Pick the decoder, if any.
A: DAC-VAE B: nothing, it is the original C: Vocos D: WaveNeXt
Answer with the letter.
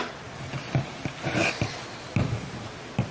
B